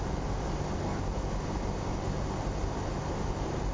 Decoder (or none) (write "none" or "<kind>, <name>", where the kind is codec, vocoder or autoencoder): none